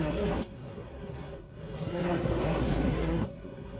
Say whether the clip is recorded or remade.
remade